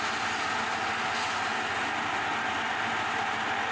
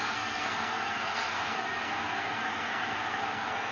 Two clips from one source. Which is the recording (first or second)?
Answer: first